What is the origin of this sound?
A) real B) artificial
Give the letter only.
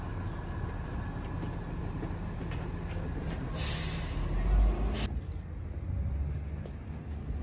A